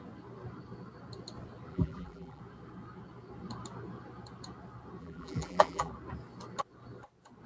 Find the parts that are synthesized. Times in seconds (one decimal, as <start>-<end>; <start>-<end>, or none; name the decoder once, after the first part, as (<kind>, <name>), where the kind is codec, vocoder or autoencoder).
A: 1.7-2.4 (vocoder, BigVGAN v2); 5.0-5.9